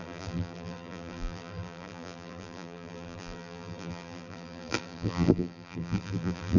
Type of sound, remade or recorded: remade